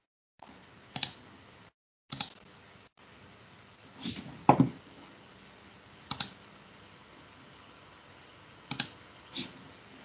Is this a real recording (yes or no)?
yes